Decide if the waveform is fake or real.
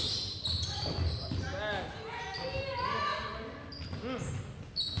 real